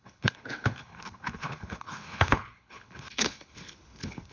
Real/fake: fake